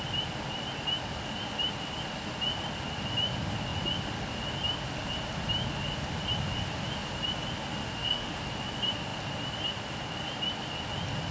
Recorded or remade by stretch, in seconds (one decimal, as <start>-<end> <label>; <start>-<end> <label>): 0.0-7.8 recorded; 7.8-8.4 remade; 8.4-11.3 recorded